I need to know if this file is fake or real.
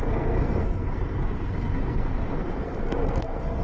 fake